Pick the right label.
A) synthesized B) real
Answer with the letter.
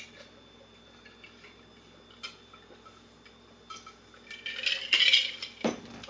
B